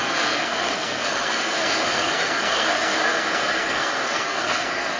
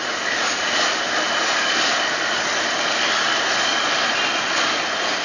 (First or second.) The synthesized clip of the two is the first